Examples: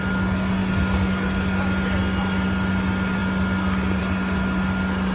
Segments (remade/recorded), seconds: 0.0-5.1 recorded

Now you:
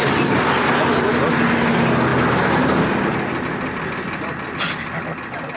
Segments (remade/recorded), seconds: 0.0-5.6 recorded

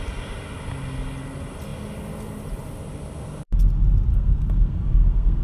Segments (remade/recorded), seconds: 0.0-4.1 recorded; 4.1-5.4 remade

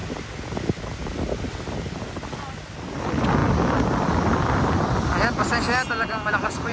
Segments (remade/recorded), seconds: 0.0-6.7 recorded

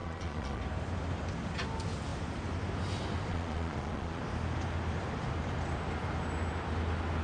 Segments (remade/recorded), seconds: 0.0-0.6 remade; 0.6-3.3 recorded; 3.3-4.2 remade; 4.2-7.2 recorded

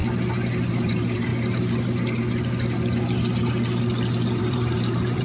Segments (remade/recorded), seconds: 0.0-0.7 recorded; 0.7-1.3 remade; 1.3-4.4 recorded; 4.4-5.2 remade

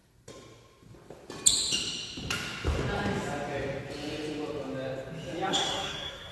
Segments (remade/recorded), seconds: 0.0-5.5 recorded; 5.5-6.3 remade

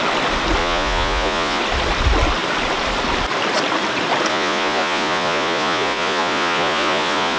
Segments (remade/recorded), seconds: 0.0-0.6 recorded; 0.6-1.6 remade; 1.6-4.3 recorded; 4.3-7.4 remade